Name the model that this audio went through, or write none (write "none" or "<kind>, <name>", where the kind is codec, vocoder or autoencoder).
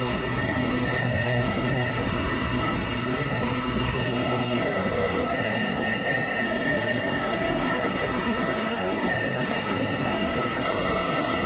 codec, SNAC